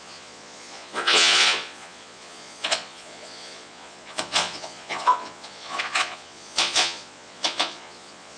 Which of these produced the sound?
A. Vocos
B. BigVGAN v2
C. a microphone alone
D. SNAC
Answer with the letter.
A